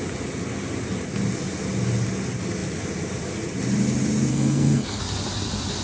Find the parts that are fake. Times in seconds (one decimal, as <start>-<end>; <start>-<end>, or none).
4.3-5.0